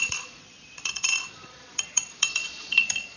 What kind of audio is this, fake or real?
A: fake